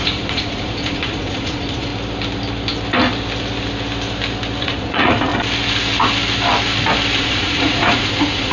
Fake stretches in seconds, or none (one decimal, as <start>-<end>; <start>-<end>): 0.0-1.9; 4.6-5.3; 7.2-8.5